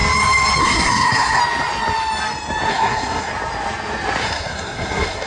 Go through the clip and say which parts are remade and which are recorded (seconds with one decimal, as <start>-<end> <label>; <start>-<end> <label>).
0.0-0.6 recorded; 0.6-1.4 remade; 1.4-2.7 recorded; 2.7-3.3 remade; 3.3-4.2 recorded; 4.2-5.3 remade